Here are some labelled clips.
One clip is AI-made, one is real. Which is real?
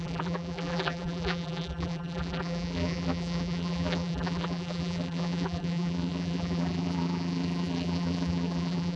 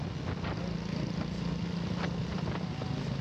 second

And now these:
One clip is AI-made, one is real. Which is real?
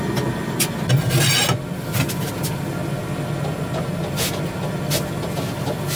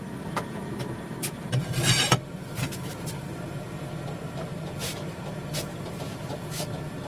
first